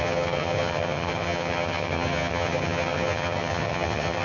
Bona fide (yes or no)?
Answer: no